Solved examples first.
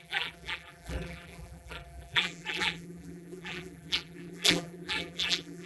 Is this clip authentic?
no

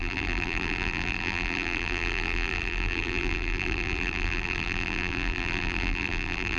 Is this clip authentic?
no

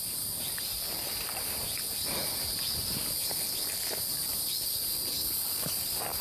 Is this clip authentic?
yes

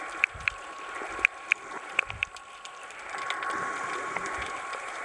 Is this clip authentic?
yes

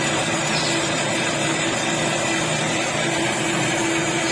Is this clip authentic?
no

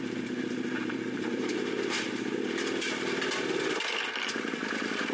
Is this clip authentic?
no